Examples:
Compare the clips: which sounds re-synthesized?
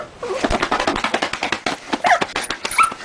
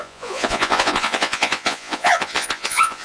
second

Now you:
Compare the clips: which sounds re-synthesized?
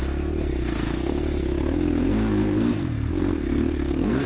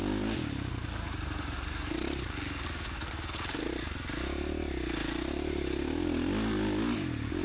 first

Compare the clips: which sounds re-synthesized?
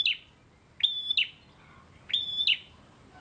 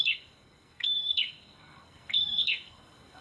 second